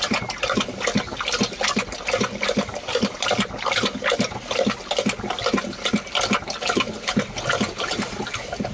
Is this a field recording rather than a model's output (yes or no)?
yes